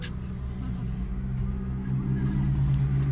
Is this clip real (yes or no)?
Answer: yes